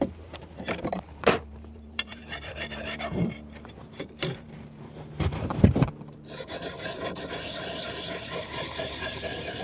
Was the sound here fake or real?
fake